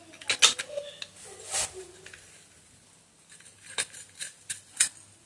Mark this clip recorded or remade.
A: recorded